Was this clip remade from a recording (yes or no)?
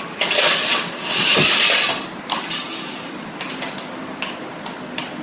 no